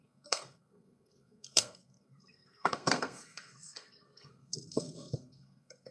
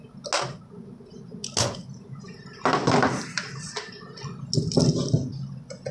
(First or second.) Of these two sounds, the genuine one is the second